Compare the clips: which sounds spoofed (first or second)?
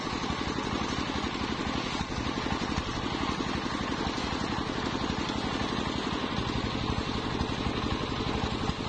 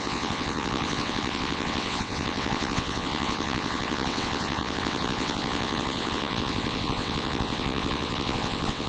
second